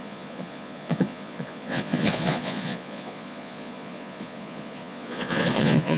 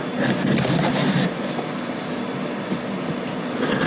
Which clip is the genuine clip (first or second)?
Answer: second